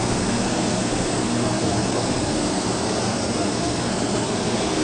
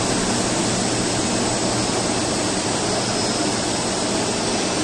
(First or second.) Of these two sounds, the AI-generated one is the first